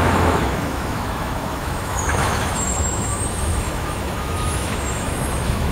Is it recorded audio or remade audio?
remade